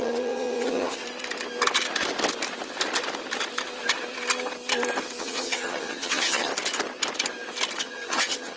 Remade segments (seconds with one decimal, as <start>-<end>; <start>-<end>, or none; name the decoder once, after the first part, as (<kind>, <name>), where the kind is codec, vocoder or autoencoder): 0.0-1.0 (vocoder, HiFi-GAN); 5.2-6.5; 7.8-8.6